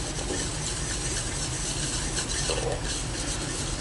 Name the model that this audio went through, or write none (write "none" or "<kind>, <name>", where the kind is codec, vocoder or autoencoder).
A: none